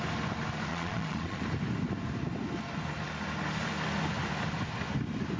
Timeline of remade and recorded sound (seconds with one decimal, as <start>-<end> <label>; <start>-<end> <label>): 0.0-0.7 recorded; 0.7-1.4 remade; 1.4-5.4 recorded

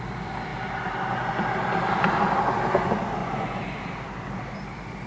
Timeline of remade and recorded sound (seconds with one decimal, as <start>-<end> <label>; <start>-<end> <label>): 0.0-3.2 recorded; 3.2-3.8 remade; 3.8-5.1 recorded

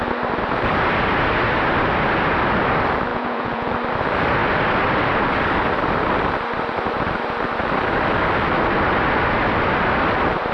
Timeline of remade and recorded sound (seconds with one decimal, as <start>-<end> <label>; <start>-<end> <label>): 0.0-3.1 recorded; 3.1-3.7 remade; 3.7-10.5 recorded

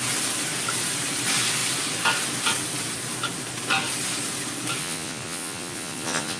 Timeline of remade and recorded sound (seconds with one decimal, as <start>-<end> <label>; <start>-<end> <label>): 0.0-4.8 recorded; 4.8-6.4 remade

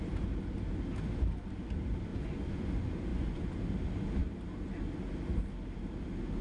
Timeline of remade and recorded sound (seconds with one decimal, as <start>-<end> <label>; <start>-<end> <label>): 0.0-2.1 recorded; 2.1-2.7 remade; 2.7-3.1 recorded; 3.1-3.6 remade; 3.6-6.4 recorded

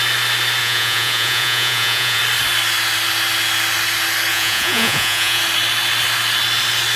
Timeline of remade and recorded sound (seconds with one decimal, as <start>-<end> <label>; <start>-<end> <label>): 0.0-0.6 recorded; 0.6-2.2 remade; 2.2-4.3 recorded; 4.3-5.4 remade; 5.4-7.0 recorded

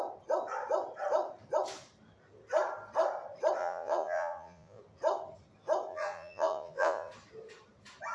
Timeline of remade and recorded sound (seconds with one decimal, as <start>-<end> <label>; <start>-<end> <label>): 0.0-3.6 recorded; 3.6-4.8 remade; 4.8-5.9 recorded; 5.9-7.1 remade; 7.1-8.1 recorded